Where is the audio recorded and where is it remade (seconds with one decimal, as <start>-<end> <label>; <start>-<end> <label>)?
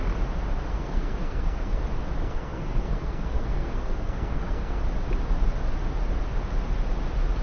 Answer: 0.0-0.7 recorded; 0.7-1.8 remade; 1.8-2.2 recorded; 2.2-4.8 remade; 4.8-7.4 recorded